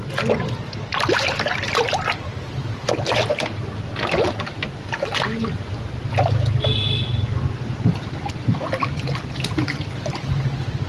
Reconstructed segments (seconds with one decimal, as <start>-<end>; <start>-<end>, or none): none